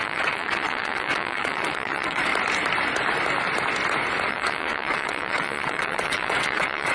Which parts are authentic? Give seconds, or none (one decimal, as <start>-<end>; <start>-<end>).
2.3-4.3